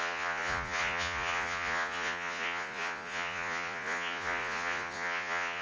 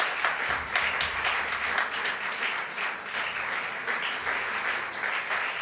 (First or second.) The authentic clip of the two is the second